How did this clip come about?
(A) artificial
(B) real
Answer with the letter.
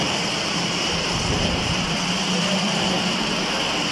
A